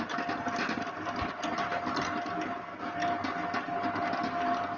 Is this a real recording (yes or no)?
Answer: yes